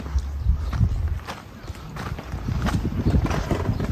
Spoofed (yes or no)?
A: no